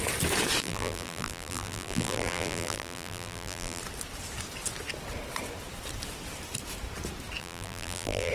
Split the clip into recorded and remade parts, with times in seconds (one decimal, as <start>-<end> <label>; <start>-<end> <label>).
0.0-0.6 recorded; 0.6-3.8 remade; 3.8-7.4 recorded; 7.4-8.3 remade